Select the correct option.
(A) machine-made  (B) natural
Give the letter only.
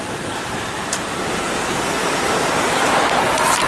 B